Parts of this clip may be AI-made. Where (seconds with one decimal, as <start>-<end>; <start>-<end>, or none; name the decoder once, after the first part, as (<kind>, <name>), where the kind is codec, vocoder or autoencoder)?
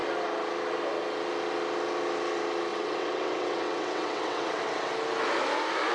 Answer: 2.7-4.9 (vocoder, WaveNeXt)